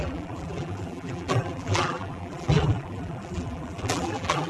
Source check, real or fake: fake